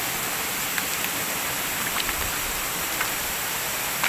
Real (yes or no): yes